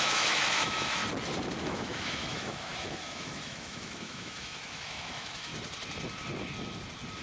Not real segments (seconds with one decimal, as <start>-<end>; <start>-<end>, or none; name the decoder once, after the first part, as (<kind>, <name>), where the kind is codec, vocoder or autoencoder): 0.0-1.0 (autoencoder, DAC-VAE); 1.6-5.5